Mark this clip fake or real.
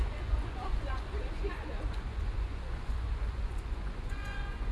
fake